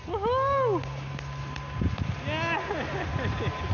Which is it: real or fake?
real